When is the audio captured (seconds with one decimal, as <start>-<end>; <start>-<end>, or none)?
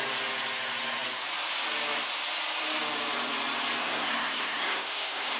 0.0-3.8